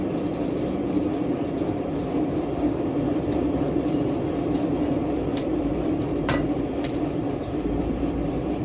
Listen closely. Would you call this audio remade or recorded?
remade